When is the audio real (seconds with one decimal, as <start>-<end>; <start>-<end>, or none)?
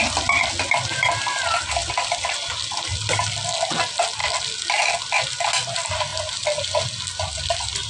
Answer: 0.0-1.8; 2.5-7.9